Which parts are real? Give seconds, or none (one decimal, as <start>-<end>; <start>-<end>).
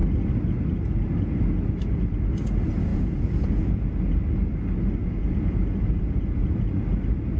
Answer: 0.0-2.9; 3.9-5.0; 6.7-7.4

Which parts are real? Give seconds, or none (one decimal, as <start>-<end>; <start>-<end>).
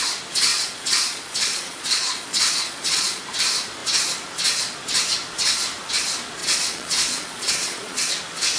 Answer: 0.0-0.5; 3.2-6.4; 8.1-8.6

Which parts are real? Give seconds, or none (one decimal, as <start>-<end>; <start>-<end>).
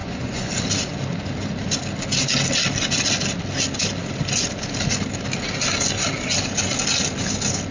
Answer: 0.5-7.7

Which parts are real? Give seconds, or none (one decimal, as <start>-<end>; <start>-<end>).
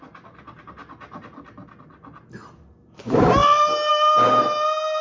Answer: 0.0-5.0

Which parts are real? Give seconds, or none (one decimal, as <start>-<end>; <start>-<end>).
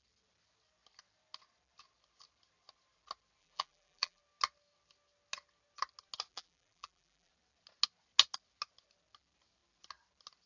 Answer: 0.0-3.4; 4.2-6.3; 7.3-10.5